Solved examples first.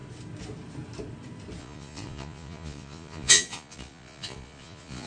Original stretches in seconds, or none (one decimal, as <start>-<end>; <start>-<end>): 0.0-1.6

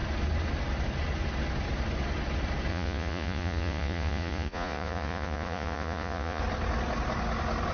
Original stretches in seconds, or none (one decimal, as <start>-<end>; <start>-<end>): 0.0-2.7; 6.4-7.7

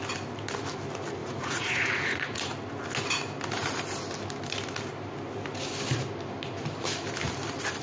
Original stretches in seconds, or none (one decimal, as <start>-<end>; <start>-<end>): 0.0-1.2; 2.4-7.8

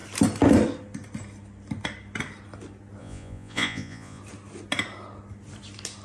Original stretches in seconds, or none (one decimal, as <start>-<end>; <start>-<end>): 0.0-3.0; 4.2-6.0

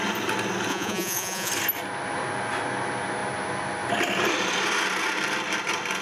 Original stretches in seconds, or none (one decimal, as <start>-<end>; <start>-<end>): 0.0-0.7; 1.5-6.0

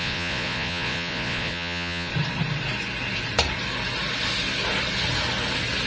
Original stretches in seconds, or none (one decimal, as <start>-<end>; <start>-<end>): 2.1-5.9